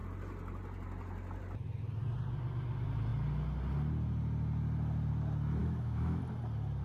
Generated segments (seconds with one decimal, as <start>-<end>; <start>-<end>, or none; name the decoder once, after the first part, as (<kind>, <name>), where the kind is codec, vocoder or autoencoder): 5.6-6.2 (autoencoder, DAC-VAE)